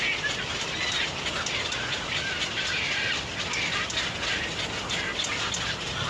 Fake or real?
real